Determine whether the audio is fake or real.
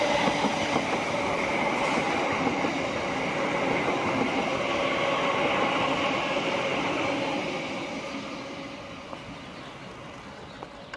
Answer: real